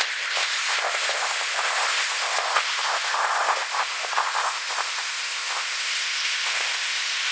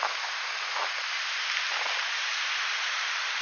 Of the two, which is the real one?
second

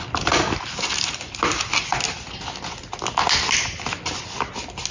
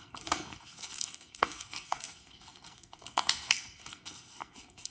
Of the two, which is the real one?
first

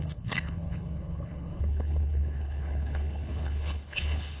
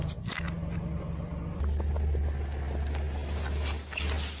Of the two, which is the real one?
second